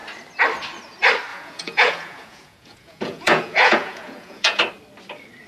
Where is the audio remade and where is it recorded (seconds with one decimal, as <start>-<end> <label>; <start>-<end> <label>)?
0.0-1.3 recorded; 1.3-4.6 remade; 4.6-5.5 recorded